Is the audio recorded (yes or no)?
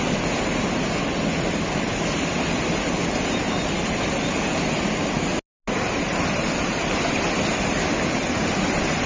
yes